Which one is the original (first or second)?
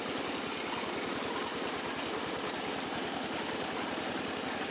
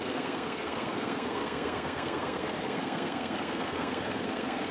first